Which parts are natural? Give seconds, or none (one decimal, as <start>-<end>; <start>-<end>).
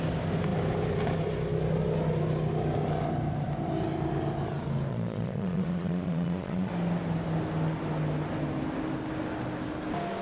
0.0-4.9; 6.7-10.2